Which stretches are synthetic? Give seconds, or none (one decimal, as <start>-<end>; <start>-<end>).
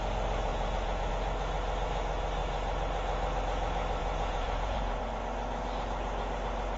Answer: 0.5-1.1; 4.0-5.0